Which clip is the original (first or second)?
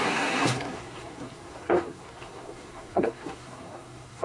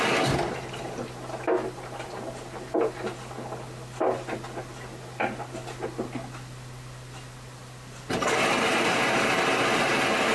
second